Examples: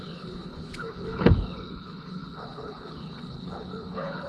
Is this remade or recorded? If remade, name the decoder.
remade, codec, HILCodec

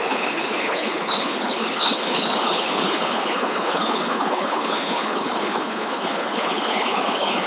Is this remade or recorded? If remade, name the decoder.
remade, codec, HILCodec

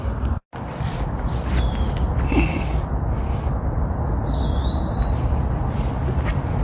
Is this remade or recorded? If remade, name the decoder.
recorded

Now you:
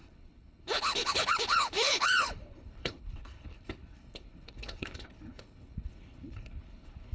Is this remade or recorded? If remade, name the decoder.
remade, codec, HILCodec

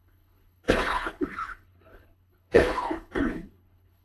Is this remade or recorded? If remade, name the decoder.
remade, codec, HILCodec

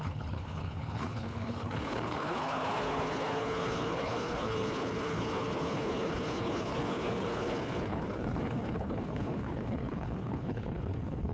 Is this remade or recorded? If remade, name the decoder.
remade, codec, HILCodec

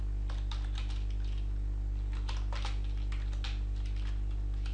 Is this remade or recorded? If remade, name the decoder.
recorded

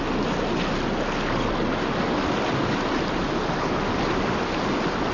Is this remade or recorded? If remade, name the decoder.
recorded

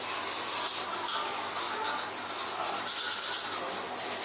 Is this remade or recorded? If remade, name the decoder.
recorded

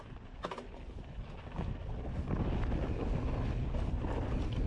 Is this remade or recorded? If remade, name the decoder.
recorded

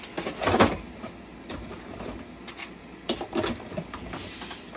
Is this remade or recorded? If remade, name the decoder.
recorded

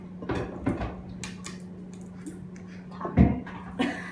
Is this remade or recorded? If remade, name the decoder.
recorded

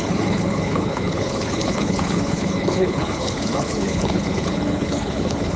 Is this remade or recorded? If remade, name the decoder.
remade, codec, HILCodec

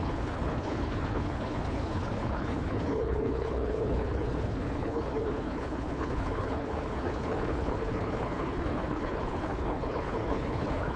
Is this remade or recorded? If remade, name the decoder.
remade, codec, HILCodec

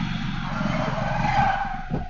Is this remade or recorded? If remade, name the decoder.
recorded